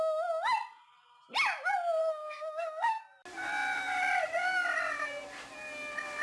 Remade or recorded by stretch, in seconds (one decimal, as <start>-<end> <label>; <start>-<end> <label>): 0.0-2.0 recorded; 2.0-3.0 remade; 3.0-6.2 recorded